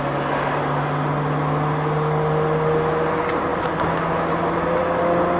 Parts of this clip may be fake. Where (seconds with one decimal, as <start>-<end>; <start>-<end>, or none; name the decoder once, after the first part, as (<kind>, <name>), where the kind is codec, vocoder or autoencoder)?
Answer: none